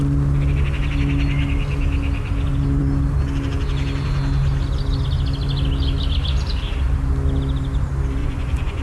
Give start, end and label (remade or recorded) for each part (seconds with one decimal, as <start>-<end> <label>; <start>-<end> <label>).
0.0-8.2 recorded; 8.2-8.8 remade